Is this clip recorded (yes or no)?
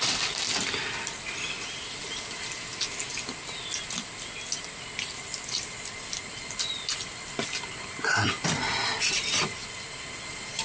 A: yes